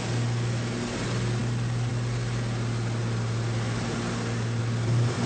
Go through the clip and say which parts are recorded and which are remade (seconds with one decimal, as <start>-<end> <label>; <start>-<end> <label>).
0.0-5.3 recorded